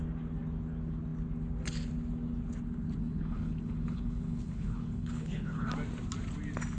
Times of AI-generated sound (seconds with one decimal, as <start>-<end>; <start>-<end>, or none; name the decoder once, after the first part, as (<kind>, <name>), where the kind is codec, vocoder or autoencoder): 3.0-5.7 (codec, HILCodec)